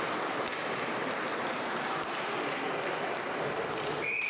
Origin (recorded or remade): recorded